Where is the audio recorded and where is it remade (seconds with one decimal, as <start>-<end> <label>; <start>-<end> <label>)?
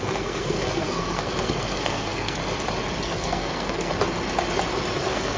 0.0-2.4 remade; 2.4-3.0 recorded; 3.0-3.9 remade; 3.9-5.0 recorded; 5.0-5.4 remade